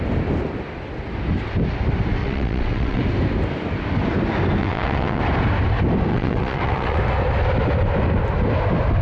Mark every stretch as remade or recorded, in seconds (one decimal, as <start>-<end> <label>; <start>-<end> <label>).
0.0-2.2 recorded; 2.2-3.0 remade; 3.0-4.6 recorded; 4.6-5.2 remade; 5.2-6.1 recorded; 6.1-7.0 remade; 7.0-9.0 recorded